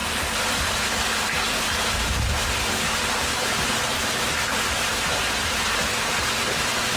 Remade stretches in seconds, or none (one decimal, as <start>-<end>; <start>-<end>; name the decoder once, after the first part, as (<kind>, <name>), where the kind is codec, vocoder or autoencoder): 4.9-5.8 (vocoder, BigVGAN v2)